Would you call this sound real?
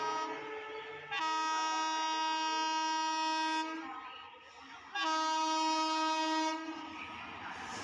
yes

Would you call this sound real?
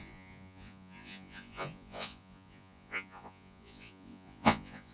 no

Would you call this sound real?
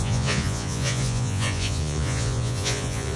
no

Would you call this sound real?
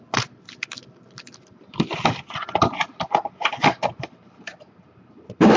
yes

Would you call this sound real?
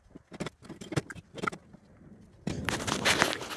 yes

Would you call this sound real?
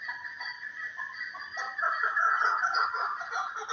yes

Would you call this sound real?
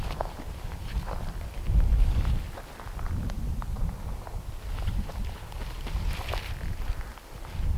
no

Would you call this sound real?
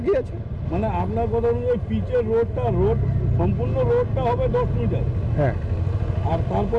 yes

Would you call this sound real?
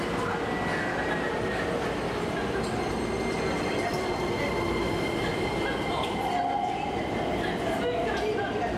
yes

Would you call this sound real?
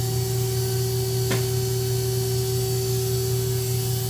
yes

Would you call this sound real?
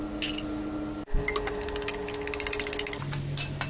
yes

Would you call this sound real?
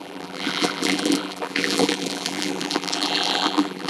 no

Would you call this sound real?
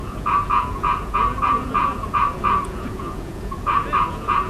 no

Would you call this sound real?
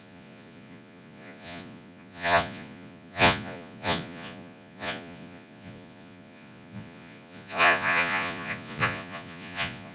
no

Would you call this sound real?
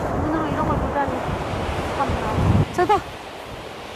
no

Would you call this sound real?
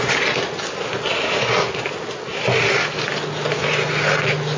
yes